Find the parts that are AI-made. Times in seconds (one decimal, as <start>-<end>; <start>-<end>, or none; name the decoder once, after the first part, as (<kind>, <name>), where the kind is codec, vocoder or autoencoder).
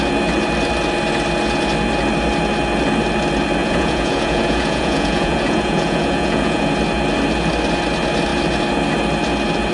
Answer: 3.6-6.6 (vocoder, Vocos)